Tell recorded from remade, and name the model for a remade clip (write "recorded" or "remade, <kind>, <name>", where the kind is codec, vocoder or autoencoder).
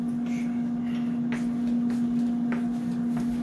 recorded